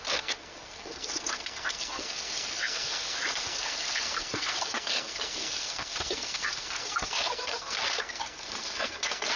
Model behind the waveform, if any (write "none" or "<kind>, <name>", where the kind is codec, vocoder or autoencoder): codec, SNAC